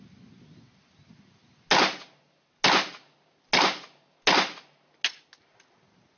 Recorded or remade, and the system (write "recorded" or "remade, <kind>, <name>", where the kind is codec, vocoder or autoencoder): recorded